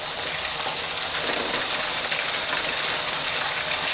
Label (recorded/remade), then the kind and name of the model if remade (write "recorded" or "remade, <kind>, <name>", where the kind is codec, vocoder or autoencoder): recorded